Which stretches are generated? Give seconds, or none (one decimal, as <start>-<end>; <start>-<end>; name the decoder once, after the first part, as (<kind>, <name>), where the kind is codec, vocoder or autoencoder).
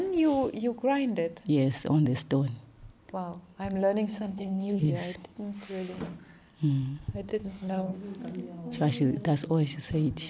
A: 4.1-4.9 (codec, HILCodec); 7.3-8.0